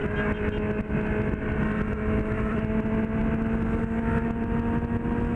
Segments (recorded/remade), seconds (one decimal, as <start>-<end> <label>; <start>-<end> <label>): 0.0-5.4 recorded